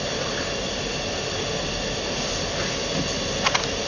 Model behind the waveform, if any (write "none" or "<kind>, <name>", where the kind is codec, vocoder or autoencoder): none